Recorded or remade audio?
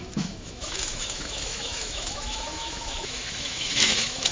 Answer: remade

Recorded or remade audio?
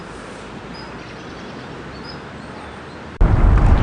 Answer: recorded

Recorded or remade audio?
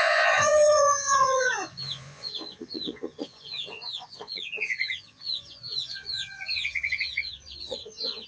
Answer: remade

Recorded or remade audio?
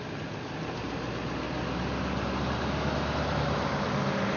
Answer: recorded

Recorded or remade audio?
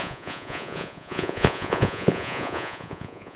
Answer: remade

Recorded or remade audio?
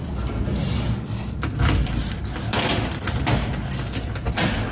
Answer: recorded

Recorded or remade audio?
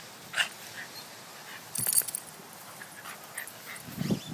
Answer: recorded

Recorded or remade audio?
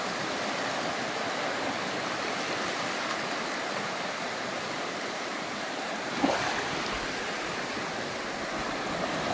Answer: recorded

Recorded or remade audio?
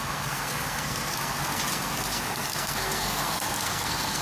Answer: remade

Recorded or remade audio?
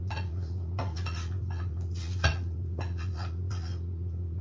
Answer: remade